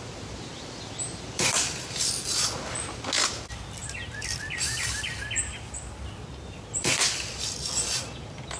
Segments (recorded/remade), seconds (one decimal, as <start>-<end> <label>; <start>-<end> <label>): 0.0-0.5 recorded; 0.5-1.9 remade; 1.9-3.8 recorded; 3.8-7.4 remade; 7.4-8.6 recorded